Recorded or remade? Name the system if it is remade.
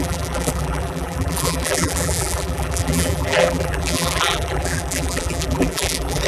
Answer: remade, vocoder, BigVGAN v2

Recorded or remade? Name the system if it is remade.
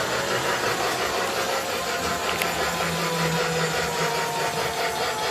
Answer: recorded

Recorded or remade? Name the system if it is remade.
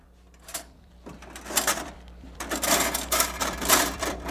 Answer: remade, vocoder, BigVGAN v2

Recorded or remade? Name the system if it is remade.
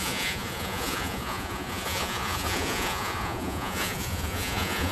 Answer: remade, vocoder, Vocos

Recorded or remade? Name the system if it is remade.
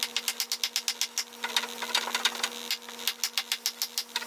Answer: recorded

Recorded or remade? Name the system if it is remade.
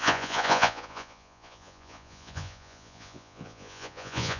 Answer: remade, vocoder, Vocos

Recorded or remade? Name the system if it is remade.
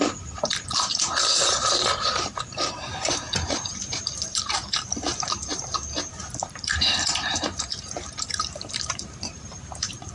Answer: remade, vocoder, BigVGAN v2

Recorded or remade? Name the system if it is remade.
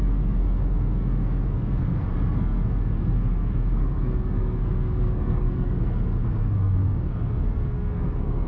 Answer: remade, codec, SNAC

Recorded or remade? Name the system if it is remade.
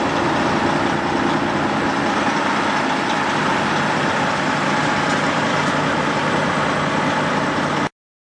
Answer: recorded